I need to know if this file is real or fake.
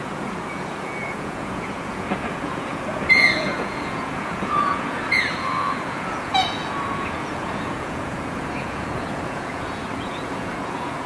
fake